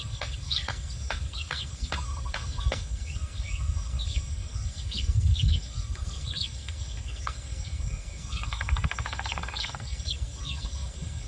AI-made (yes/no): yes